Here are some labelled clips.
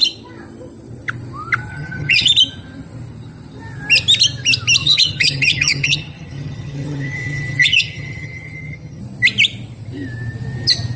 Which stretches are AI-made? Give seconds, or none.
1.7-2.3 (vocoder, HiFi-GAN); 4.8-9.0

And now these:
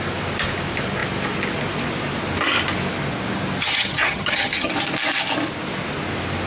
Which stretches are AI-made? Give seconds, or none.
3.6-4.7 (vocoder, HiFi-GAN)

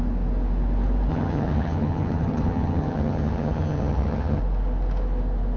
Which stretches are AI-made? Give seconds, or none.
1.1-4.4 (vocoder, HiFi-GAN)

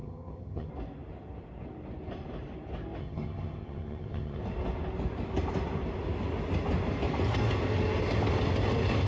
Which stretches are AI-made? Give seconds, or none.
0.0-0.7 (vocoder, HiFi-GAN); 3.0-4.4

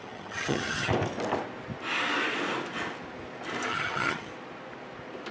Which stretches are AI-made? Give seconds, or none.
0.0-0.9 (vocoder, HiFi-GAN); 3.7-4.3

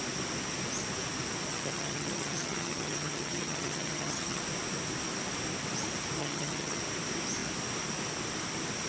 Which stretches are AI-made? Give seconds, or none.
1.5-4.4 (vocoder, HiFi-GAN); 6.2-6.8

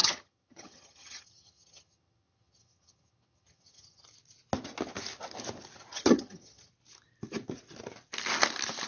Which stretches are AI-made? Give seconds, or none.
0.0-4.0 (vocoder, HiFi-GAN); 5.9-6.7